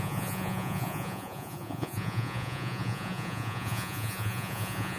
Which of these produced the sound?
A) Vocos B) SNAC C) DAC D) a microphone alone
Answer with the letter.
A